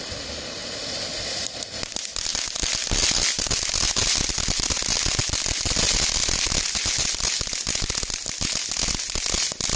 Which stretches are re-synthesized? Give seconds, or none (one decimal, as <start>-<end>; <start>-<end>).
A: none